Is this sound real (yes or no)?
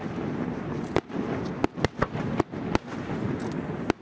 yes